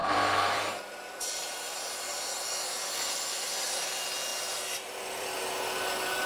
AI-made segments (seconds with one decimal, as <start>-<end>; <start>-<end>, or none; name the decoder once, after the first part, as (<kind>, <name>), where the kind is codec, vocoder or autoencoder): 0.0-2.3 (vocoder, BigVGAN v2)